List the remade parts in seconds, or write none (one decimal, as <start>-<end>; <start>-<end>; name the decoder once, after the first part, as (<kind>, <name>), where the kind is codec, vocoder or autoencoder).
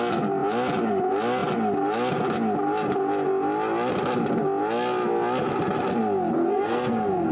6.4-7.3 (codec, SNAC)